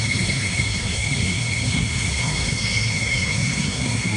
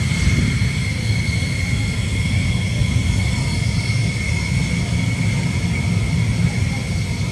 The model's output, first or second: first